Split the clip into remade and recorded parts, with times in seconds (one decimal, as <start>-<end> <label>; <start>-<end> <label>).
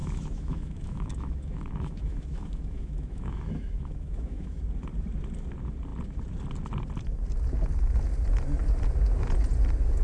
0.0-4.6 remade; 4.6-10.0 recorded